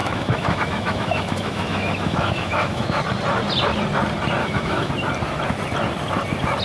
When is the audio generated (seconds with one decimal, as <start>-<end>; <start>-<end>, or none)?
0.0-3.0; 4.4-4.9